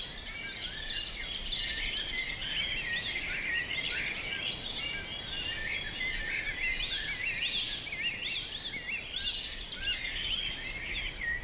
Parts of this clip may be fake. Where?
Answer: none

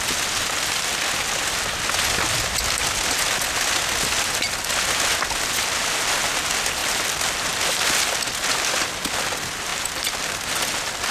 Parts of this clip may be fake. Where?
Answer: none

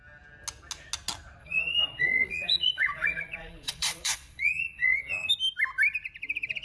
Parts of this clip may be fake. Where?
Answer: 1.4-5.3 (vocoder, Vocos)

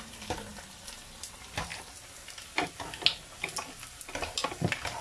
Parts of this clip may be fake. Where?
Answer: none

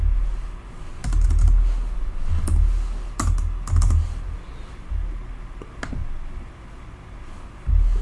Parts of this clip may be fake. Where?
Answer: none